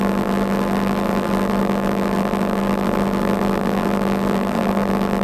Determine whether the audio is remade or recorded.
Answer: remade